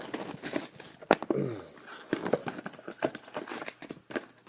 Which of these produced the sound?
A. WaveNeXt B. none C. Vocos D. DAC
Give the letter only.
B